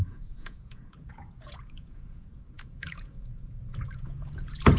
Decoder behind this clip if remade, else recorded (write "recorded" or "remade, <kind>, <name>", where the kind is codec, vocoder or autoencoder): remade, vocoder, Vocos